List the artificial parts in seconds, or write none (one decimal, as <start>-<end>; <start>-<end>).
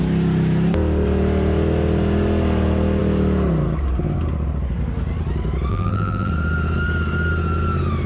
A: 5.7-6.3